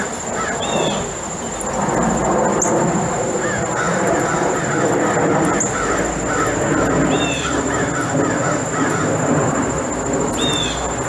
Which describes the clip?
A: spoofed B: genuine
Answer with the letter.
B